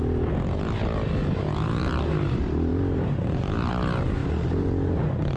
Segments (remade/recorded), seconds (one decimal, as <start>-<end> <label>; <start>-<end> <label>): 0.0-5.4 recorded